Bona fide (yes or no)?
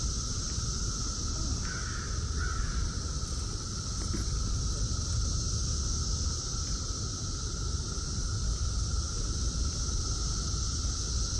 yes